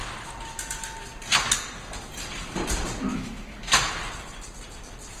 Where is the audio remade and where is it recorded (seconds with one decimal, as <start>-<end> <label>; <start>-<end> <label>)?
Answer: 0.0-3.1 recorded; 3.1-3.9 remade; 3.9-5.2 recorded